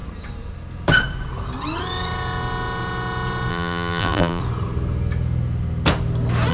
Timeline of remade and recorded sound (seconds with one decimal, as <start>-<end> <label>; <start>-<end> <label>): 0.0-3.5 recorded; 3.5-4.4 remade; 4.4-6.5 recorded